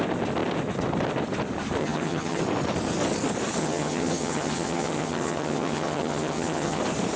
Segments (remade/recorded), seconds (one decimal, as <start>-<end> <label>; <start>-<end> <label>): 0.0-1.8 recorded; 1.8-2.4 remade; 2.4-3.6 recorded; 3.6-6.8 remade; 6.8-7.2 recorded